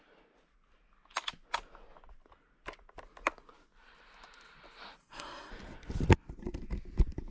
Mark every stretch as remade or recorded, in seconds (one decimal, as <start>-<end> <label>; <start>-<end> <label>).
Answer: 0.0-5.0 recorded; 5.0-5.5 remade; 5.5-7.3 recorded

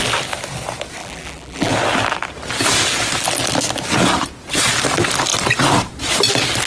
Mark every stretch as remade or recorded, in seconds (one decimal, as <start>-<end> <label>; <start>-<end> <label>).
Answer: 0.0-1.0 recorded; 1.0-1.7 remade; 1.7-6.7 recorded

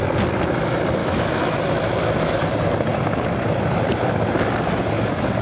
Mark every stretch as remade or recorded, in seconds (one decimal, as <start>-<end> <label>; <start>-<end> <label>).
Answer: 0.0-1.0 recorded; 1.0-1.6 remade; 1.6-5.4 recorded

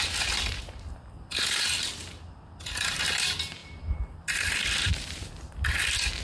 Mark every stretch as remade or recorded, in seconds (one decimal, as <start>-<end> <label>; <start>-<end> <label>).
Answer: 0.0-3.6 recorded; 3.6-5.3 remade; 5.3-6.2 recorded

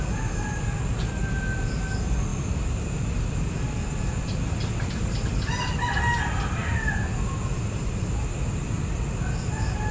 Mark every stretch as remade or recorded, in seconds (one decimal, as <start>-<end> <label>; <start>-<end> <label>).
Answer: 0.0-2.3 recorded; 2.3-5.1 remade; 5.1-9.9 recorded

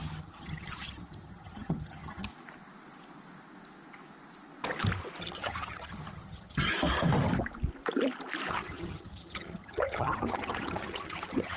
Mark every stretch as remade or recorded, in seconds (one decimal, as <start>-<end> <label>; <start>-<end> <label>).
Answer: 0.0-2.3 remade; 2.3-5.2 recorded; 5.2-6.7 remade; 6.7-8.5 recorded; 8.5-11.6 remade

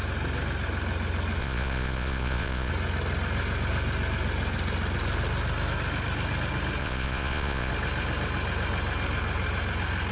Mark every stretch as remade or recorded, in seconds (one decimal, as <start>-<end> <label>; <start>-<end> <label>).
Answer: 0.0-1.4 recorded; 1.4-2.7 remade; 2.7-6.8 recorded; 6.8-7.7 remade; 7.7-10.1 recorded